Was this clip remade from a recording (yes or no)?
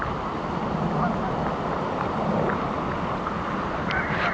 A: no